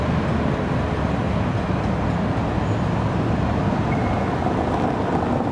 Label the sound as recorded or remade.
recorded